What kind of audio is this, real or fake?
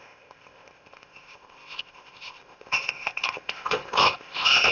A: fake